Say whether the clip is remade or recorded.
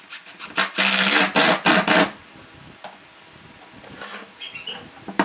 recorded